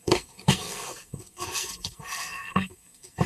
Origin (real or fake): fake